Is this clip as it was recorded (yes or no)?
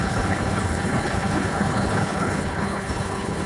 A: no